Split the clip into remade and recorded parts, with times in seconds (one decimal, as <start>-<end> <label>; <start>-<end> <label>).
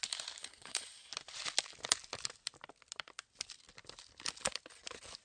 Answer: 0.0-0.4 recorded; 0.4-1.1 remade; 1.1-5.2 recorded